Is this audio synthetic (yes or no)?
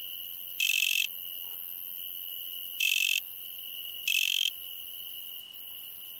no